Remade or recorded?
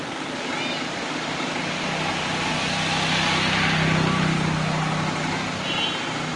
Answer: recorded